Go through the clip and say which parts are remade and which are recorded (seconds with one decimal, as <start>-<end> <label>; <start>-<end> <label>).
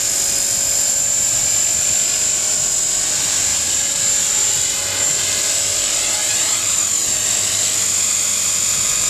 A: 0.0-6.2 recorded; 6.2-6.8 remade; 6.8-9.1 recorded